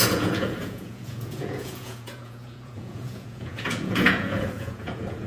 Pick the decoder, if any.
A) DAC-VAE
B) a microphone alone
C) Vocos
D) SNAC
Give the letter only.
C